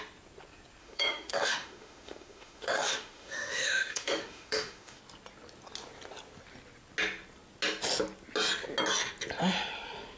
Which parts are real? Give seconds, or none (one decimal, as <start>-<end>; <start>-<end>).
0.0-0.8; 5.0-10.2